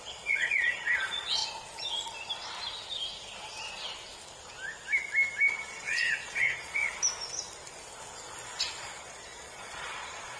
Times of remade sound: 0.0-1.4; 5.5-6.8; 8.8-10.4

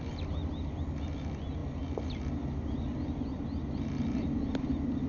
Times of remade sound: none

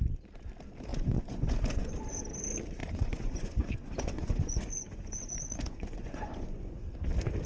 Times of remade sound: 0.9-2.0; 2.8-6.8

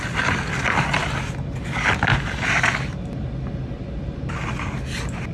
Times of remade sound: none